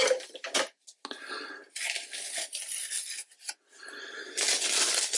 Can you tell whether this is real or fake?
real